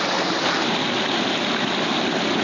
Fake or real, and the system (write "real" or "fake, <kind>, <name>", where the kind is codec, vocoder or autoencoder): real